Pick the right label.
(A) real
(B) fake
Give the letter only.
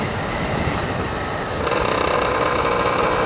A